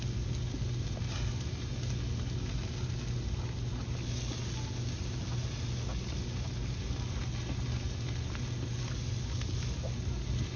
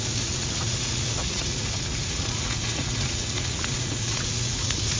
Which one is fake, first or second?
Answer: second